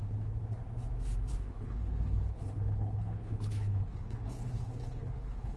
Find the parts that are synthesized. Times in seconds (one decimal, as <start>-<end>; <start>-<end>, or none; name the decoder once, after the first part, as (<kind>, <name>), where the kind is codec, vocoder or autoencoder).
0.0-0.6 (codec, HILCodec); 1.3-5.6